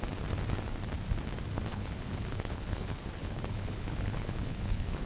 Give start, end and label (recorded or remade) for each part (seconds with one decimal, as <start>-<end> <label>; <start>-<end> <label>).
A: 0.0-1.7 recorded; 1.7-5.1 remade